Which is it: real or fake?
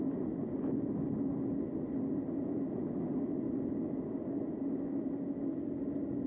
real